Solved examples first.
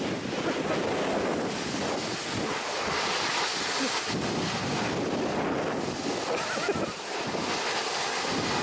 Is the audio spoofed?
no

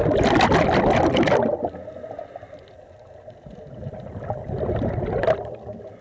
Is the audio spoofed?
no